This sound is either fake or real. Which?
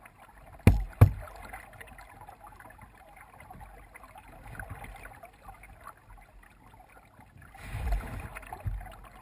real